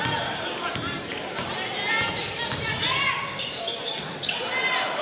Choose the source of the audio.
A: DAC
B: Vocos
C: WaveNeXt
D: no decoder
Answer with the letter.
D